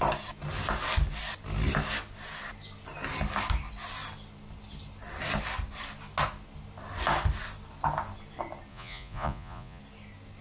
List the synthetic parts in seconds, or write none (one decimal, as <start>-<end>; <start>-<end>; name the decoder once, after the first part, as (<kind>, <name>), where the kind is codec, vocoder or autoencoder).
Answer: 8.7-9.8 (vocoder, Vocos)